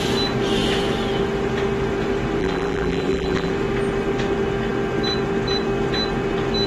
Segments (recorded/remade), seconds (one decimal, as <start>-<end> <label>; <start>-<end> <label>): 0.0-2.4 recorded; 2.4-3.5 remade; 3.5-6.7 recorded